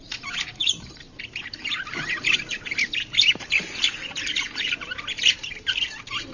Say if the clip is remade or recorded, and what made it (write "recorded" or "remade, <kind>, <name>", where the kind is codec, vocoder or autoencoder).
remade, vocoder, BigVGAN v2